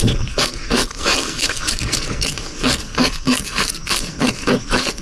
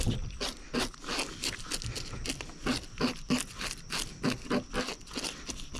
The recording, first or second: second